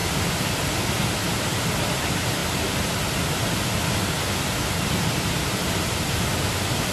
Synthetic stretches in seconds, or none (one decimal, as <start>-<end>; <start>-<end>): none